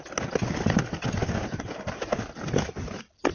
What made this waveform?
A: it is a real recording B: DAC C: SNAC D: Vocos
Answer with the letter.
A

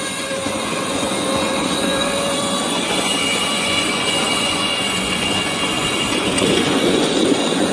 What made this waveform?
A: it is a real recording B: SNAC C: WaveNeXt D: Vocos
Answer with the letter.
D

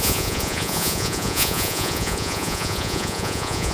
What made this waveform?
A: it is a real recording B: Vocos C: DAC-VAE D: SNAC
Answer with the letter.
B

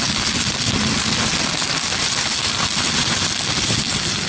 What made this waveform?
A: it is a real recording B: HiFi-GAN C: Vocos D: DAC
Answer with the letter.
A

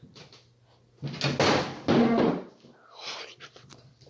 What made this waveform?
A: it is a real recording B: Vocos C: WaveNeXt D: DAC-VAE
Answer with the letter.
A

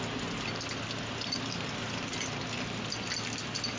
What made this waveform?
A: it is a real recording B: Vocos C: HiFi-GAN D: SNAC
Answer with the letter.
A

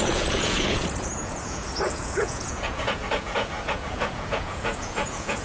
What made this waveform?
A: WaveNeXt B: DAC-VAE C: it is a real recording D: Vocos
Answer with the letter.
D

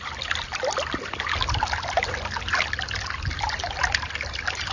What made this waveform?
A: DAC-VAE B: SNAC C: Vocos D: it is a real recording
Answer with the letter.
D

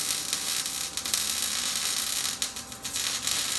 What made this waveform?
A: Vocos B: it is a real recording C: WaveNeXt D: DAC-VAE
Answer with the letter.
B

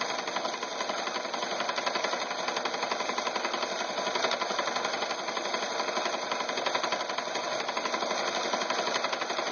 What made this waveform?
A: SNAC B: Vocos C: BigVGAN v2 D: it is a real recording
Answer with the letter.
D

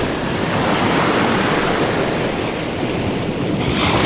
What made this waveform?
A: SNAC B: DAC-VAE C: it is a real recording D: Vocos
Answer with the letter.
C